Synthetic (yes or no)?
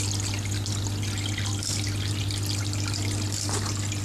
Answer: no